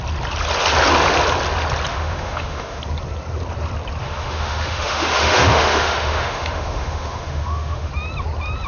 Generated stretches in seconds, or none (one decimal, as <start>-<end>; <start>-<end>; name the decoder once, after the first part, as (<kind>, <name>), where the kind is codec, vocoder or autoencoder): 1.9-2.8 (autoencoder, DAC-VAE); 4.0-7.9